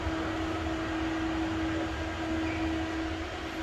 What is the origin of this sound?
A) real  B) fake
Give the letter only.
A